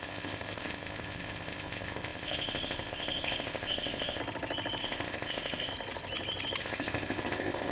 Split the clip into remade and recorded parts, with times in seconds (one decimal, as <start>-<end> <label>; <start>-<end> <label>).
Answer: 0.0-4.2 remade; 4.2-4.8 recorded; 4.8-5.7 remade; 5.7-6.6 recorded; 6.6-7.7 remade

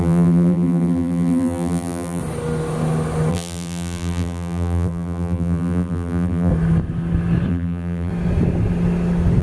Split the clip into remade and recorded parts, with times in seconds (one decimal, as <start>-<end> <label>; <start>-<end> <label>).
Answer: 0.0-2.2 remade; 2.2-3.3 recorded; 3.3-6.5 remade; 6.5-7.5 recorded; 7.5-8.1 remade; 8.1-9.4 recorded

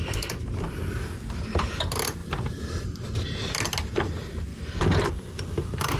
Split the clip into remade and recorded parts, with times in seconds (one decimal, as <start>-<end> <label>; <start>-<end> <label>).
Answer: 0.0-2.2 recorded; 2.2-3.6 remade; 3.6-4.5 recorded; 4.5-6.0 remade